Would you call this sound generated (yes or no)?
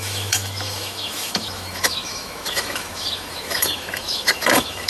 yes